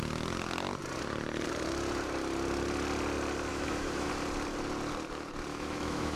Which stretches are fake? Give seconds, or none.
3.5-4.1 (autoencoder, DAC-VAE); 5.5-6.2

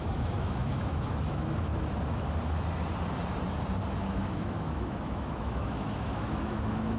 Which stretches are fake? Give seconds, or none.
0.0-1.7 (autoencoder, DAC-VAE); 3.9-7.0

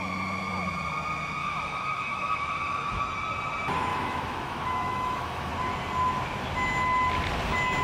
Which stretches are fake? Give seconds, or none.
1.4-3.0 (autoencoder, DAC-VAE); 3.9-5.5

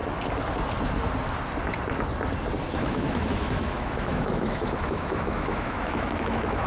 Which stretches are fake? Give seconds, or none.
2.8-6.7 (autoencoder, DAC-VAE)

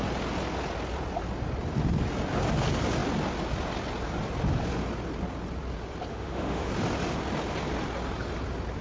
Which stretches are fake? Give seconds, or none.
6.1-6.7 (autoencoder, DAC-VAE)

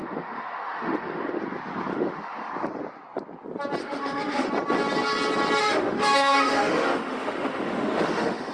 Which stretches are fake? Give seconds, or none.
0.0-1.4 (autoencoder, DAC-VAE); 1.9-2.5; 3.8-4.5; 5.6-8.5

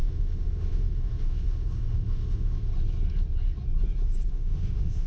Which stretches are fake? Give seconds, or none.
0.0-2.7 (autoencoder, DAC-VAE); 4.3-5.1

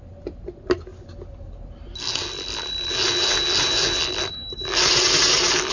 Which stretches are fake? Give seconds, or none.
none